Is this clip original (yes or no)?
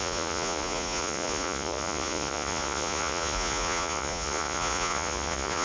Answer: no